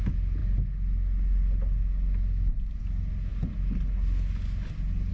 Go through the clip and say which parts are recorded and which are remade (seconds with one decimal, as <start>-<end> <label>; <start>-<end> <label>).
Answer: 0.0-5.1 recorded